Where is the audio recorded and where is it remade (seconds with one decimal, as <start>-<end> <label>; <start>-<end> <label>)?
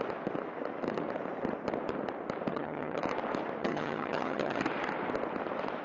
0.0-2.5 recorded; 2.5-3.0 remade; 3.0-3.6 recorded; 3.6-4.6 remade; 4.6-5.8 recorded